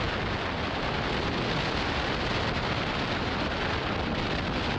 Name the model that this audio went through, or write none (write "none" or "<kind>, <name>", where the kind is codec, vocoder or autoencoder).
none